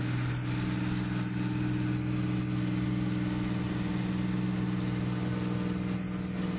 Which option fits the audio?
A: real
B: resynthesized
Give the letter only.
A